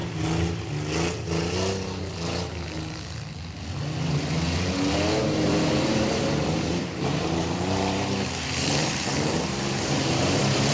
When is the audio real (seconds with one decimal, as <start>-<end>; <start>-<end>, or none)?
0.0-5.2